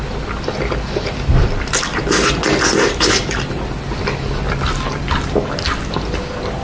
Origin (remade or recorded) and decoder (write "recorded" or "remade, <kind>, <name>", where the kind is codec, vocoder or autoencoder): recorded